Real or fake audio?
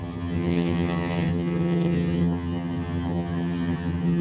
fake